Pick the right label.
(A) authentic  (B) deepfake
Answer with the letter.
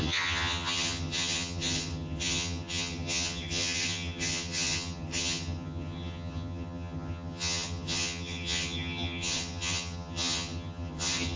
B